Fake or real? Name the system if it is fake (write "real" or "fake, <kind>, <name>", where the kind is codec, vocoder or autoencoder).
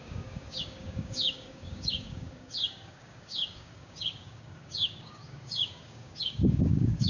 fake, codec, DAC